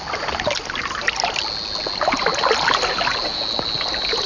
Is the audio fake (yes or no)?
no